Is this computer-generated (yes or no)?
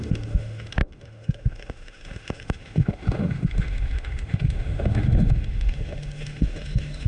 yes